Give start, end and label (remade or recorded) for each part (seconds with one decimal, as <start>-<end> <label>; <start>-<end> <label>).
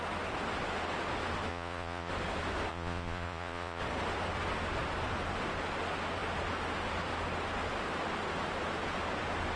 0.0-1.5 recorded; 1.5-2.1 remade; 2.1-2.7 recorded; 2.7-3.8 remade; 3.8-9.6 recorded